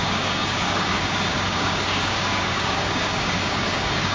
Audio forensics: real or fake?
fake